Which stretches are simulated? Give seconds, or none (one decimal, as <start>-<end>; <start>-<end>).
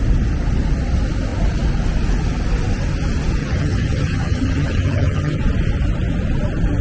3.4-5.4